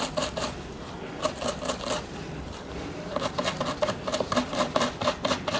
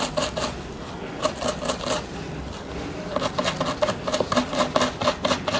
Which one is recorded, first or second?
second